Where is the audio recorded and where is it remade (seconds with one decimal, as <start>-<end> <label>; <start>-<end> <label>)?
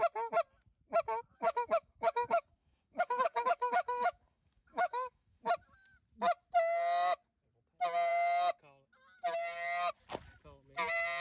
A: 0.0-1.3 recorded; 1.3-5.4 remade; 5.4-11.2 recorded